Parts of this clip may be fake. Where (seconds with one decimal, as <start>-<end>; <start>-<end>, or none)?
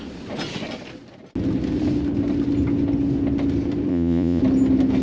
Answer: 3.9-4.4